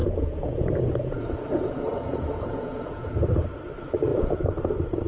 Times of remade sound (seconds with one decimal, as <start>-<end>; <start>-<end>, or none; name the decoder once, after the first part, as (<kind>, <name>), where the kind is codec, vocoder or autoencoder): 0.0-3.1 (vocoder, Vocos); 4.1-5.1